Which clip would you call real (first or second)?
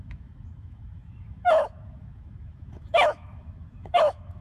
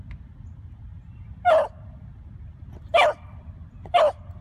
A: second